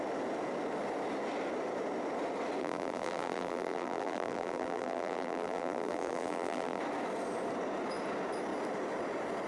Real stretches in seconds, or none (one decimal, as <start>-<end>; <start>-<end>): 0.0-2.6; 6.8-9.5